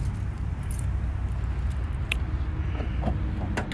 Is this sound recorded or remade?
recorded